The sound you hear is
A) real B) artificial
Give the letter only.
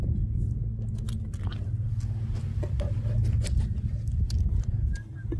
A